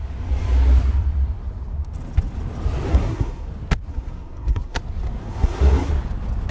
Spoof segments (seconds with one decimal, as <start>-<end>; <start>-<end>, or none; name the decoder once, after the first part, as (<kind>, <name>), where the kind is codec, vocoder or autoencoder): 2.9-3.5 (codec, SNAC); 3.9-4.8; 5.2-5.9